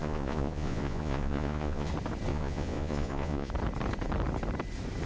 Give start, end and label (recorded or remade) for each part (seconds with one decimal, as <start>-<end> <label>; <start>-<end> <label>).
0.0-1.9 remade; 1.9-2.3 recorded; 2.3-3.5 remade; 3.5-5.1 recorded